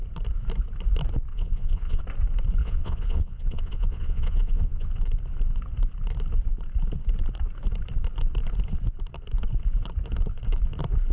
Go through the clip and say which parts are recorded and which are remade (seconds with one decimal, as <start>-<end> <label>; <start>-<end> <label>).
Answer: 0.0-1.3 recorded; 1.3-2.0 remade; 2.0-2.6 recorded; 2.6-4.9 remade; 4.9-11.1 recorded